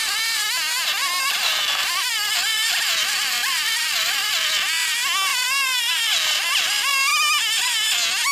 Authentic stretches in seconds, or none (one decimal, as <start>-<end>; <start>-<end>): 0.0-1.0; 4.5-5.3; 7.1-8.3